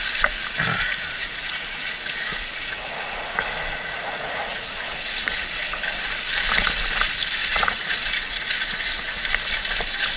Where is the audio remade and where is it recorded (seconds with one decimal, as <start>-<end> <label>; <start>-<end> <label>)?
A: 0.0-1.2 recorded; 1.2-5.8 remade; 5.8-7.4 recorded; 7.4-9.2 remade; 9.2-10.2 recorded